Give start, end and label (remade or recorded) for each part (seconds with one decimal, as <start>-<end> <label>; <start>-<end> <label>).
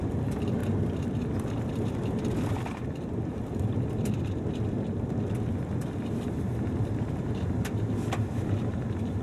0.0-0.6 remade; 0.6-1.5 recorded; 1.5-9.2 remade